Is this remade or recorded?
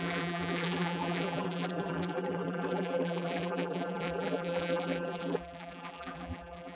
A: remade